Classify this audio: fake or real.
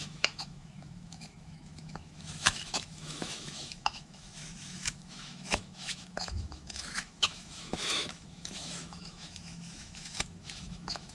fake